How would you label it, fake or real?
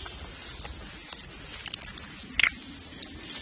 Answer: real